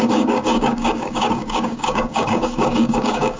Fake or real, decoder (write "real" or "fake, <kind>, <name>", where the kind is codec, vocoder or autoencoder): fake, codec, DAC